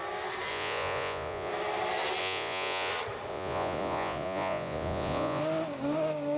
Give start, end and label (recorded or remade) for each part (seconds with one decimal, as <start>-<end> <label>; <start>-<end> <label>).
0.0-0.5 recorded; 0.5-1.5 remade; 1.5-2.2 recorded; 2.2-2.9 remade; 2.9-3.3 recorded; 3.3-5.4 remade; 5.4-6.4 recorded